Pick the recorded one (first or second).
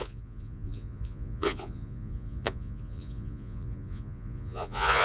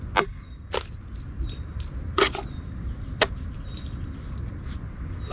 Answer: second